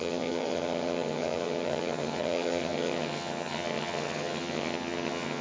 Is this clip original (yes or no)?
no